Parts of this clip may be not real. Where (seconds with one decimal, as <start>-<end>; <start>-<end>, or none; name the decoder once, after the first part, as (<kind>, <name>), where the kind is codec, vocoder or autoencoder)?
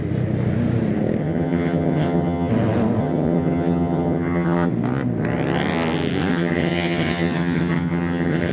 1.2-2.5 (vocoder, HiFi-GAN); 3.0-4.7; 6.3-8.5